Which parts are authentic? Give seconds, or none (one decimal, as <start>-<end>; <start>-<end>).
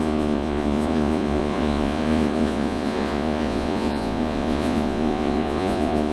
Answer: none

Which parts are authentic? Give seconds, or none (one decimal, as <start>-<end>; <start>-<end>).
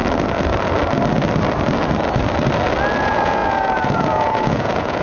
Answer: 0.0-3.0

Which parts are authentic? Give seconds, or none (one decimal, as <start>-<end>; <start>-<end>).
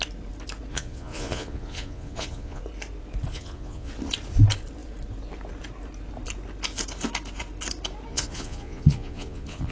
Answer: 0.0-0.7; 2.6-3.3; 3.9-8.1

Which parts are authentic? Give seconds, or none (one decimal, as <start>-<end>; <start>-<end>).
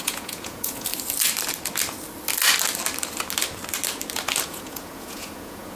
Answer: 0.9-4.4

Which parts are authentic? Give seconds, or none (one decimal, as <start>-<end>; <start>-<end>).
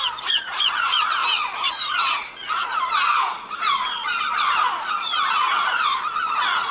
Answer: none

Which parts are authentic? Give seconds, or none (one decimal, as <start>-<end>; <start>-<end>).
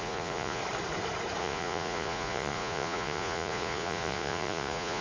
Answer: 0.6-1.4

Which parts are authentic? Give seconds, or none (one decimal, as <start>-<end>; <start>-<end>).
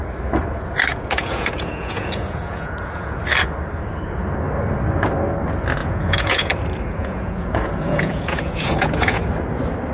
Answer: 0.0-0.9; 3.2-5.8; 6.5-7.0; 9.2-9.9